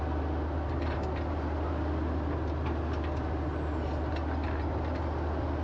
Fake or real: real